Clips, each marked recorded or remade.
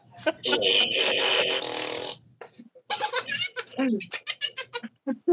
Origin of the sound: recorded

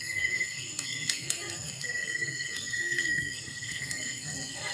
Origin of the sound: remade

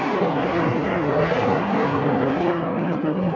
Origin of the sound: remade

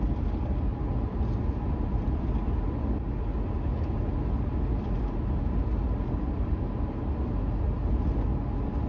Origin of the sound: recorded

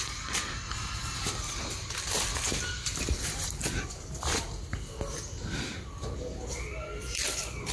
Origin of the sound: recorded